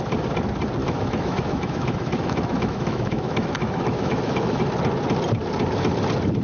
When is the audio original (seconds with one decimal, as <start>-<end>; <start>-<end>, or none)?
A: 0.0-0.8; 4.6-6.4